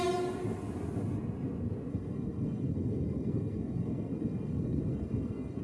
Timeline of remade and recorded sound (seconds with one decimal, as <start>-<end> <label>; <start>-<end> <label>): 0.0-1.9 recorded; 1.9-5.6 remade